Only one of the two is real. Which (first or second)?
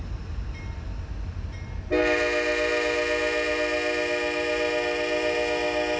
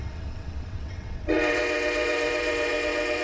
first